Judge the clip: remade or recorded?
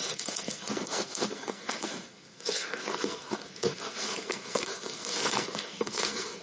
remade